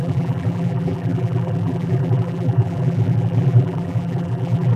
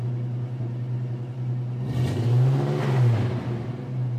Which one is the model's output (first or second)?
first